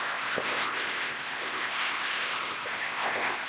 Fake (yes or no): yes